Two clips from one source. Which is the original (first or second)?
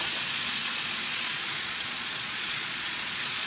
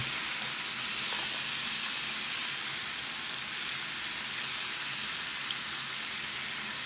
second